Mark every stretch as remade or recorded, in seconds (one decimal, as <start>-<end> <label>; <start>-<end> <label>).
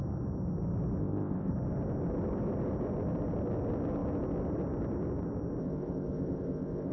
0.0-1.0 recorded; 1.0-1.5 remade; 1.5-5.6 recorded; 5.6-6.9 remade